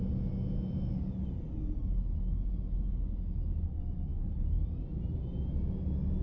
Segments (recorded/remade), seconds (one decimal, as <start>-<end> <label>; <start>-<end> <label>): 0.0-6.2 recorded